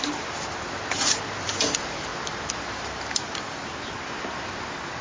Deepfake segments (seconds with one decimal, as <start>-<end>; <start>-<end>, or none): 0.0-5.0